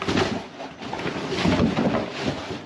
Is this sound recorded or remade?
recorded